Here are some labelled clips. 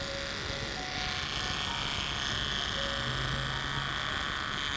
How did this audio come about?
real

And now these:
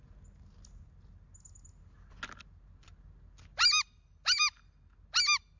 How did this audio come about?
real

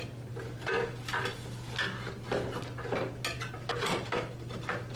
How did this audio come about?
real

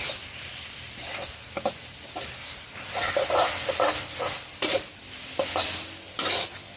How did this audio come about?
real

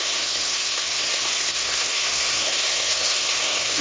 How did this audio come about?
fake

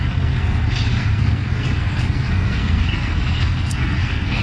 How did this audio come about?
fake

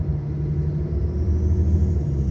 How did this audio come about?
real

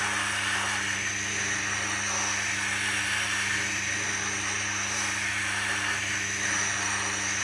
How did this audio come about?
real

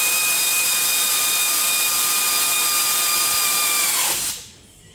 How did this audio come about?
real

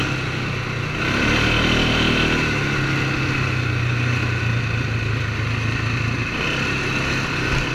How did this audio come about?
real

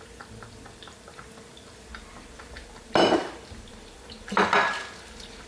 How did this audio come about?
fake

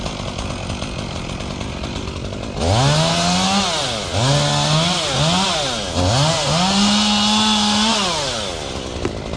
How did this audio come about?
real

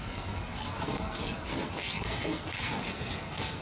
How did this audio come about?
fake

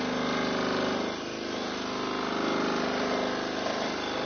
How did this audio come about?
real